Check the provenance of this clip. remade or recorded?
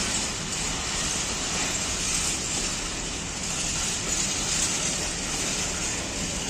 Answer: recorded